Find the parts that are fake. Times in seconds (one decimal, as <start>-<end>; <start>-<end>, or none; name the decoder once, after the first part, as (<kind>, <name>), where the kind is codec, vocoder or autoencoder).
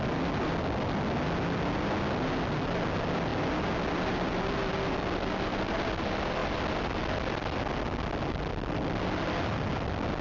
none